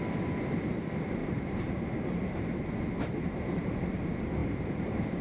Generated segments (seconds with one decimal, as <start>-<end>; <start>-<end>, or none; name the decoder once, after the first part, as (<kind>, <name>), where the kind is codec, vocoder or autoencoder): 1.2-2.7 (vocoder, BigVGAN v2); 3.1-3.7; 4.4-5.2